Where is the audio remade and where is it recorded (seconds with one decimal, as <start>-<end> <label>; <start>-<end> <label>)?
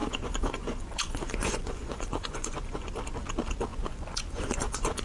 0.0-2.9 remade; 2.9-3.7 recorded; 3.7-5.0 remade